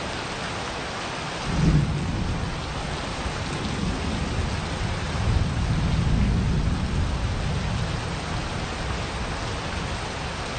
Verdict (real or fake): real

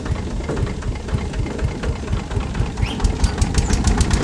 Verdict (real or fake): real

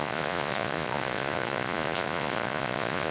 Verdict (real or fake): fake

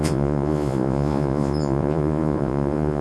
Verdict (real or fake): fake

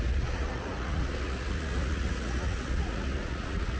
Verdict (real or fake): fake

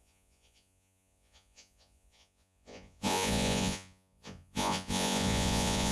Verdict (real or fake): fake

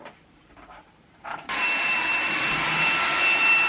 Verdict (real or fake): fake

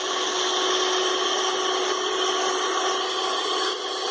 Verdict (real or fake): real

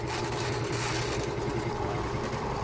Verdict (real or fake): real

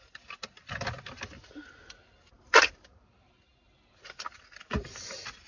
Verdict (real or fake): real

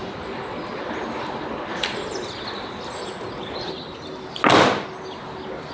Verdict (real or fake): real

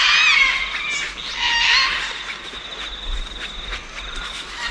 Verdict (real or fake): real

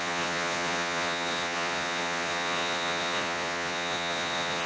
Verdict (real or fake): fake